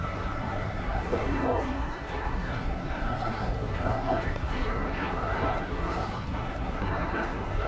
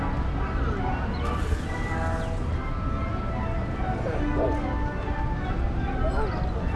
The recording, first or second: second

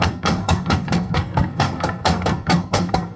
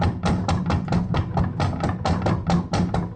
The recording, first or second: second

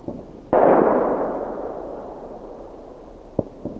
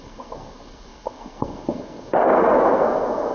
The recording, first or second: first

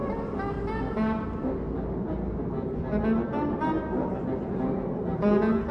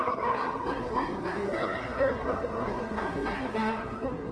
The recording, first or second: first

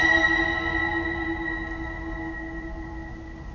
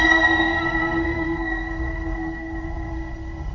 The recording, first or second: first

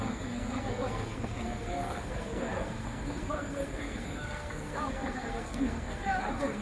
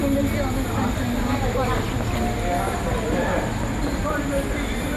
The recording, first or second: second